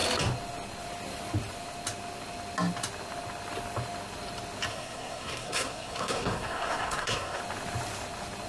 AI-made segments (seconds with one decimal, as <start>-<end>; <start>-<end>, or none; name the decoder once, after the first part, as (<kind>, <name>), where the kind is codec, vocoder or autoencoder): 4.7-7.4 (codec, SNAC)